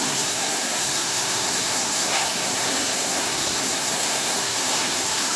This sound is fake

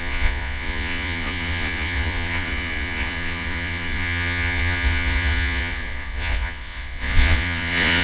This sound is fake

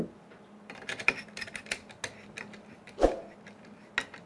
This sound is real